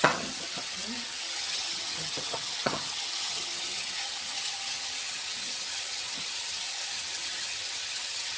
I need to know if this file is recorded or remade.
remade